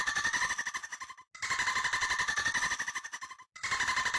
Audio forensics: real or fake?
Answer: real